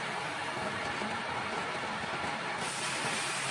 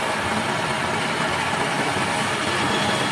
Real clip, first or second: second